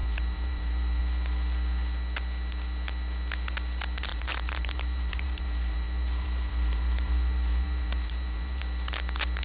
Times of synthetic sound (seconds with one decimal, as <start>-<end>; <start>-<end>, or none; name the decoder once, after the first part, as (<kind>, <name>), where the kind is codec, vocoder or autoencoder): 0.0-1.0 (vocoder, BigVGAN v2); 4.1-8.6